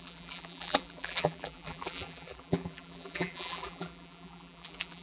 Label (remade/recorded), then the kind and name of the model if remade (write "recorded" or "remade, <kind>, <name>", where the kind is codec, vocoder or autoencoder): remade, vocoder, BigVGAN v2